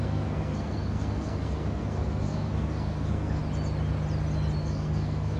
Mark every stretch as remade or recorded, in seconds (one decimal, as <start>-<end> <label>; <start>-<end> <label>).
0.0-3.4 remade; 3.4-4.6 recorded; 4.6-5.4 remade

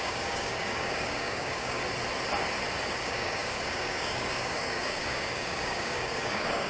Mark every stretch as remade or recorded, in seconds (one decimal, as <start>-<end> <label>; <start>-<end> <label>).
0.0-1.8 remade; 1.8-2.9 recorded; 2.9-6.7 remade

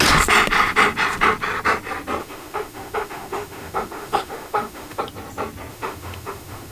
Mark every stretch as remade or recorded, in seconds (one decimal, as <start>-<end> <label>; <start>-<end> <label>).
0.0-2.2 recorded; 2.2-5.0 remade; 5.0-5.7 recorded; 5.7-6.7 remade